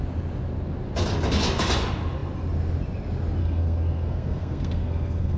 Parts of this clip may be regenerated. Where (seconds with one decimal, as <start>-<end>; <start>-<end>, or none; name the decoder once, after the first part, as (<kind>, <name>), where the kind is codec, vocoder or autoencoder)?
3.4-5.4 (codec, SNAC)